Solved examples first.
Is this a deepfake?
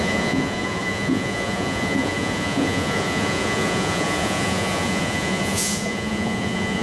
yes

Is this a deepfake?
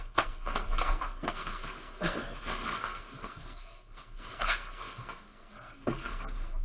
yes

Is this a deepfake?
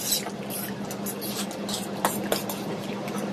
no